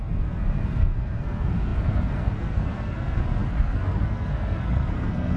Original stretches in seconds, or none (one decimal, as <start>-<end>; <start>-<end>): none